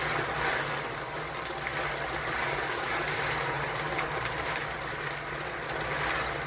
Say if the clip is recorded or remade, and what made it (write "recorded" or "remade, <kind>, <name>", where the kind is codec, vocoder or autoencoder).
recorded